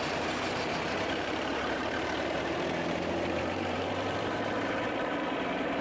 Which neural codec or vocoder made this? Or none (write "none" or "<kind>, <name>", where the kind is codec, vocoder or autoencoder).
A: vocoder, BigVGAN v2